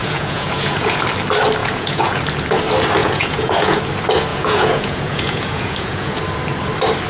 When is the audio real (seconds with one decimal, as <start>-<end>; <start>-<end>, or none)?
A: 1.0-1.6; 2.2-3.0; 3.8-4.3; 6.2-7.1